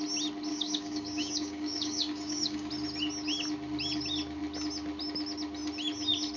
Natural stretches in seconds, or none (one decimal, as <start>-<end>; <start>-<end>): 0.0-0.5; 2.7-6.4